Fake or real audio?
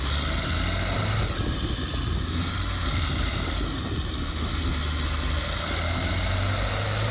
real